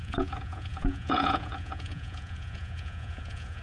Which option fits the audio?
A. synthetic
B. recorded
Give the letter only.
A